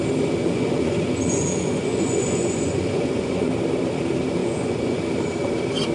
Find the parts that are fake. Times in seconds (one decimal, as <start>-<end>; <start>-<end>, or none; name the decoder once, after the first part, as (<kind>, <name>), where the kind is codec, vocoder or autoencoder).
0.4-3.5 (vocoder, Vocos); 4.4-5.0